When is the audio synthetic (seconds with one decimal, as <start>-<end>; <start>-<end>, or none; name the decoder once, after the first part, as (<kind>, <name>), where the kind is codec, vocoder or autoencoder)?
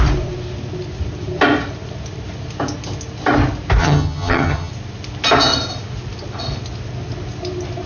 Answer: 3.8-4.7 (vocoder, HiFi-GAN)